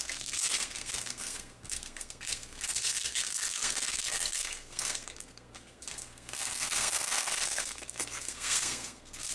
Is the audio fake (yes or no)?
yes